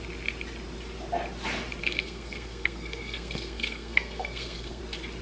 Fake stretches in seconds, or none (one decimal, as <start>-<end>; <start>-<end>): 1.8-4.8